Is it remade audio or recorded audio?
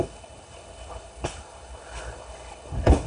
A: remade